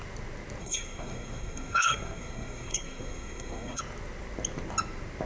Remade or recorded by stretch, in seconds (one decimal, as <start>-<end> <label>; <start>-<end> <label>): 0.0-0.6 recorded; 0.6-3.8 remade; 3.8-5.3 recorded